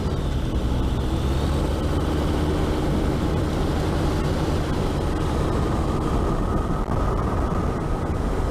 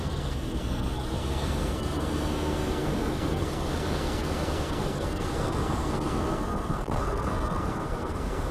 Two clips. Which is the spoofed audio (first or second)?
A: second